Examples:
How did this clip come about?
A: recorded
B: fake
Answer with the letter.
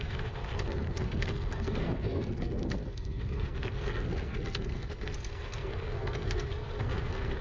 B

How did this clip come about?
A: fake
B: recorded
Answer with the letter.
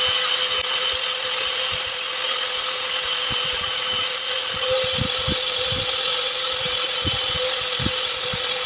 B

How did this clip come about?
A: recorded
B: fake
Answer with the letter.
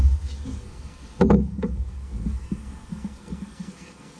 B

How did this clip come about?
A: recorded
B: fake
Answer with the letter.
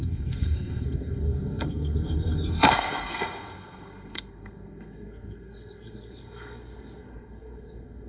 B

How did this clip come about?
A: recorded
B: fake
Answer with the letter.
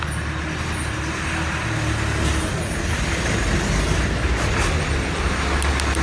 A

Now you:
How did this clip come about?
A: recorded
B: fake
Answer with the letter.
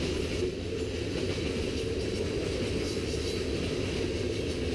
A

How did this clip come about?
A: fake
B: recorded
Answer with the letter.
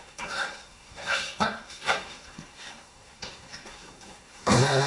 A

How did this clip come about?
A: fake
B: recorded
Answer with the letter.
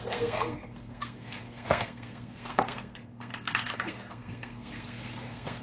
A